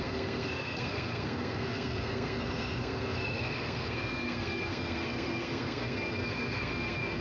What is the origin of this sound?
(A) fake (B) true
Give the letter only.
A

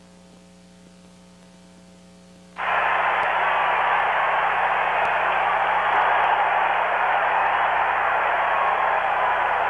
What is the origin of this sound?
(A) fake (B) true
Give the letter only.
B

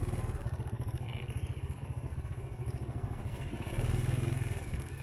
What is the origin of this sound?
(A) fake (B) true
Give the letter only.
A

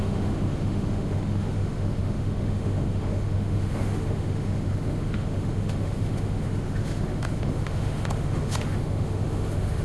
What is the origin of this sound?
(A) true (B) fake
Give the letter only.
B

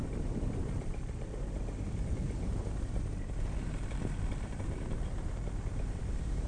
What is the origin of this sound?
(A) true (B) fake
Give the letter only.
B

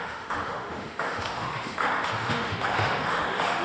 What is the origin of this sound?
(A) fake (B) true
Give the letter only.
A